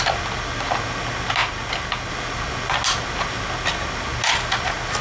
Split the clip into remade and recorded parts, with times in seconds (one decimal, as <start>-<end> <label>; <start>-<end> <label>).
0.0-5.0 recorded